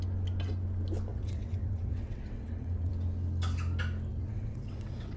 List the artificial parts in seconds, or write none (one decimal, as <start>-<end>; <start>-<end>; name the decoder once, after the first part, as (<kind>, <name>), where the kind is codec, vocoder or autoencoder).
1.1-2.9 (vocoder, WaveNeXt); 4.1-5.2